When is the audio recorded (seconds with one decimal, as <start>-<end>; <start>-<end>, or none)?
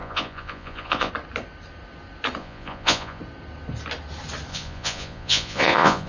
1.1-2.4; 3.2-4.5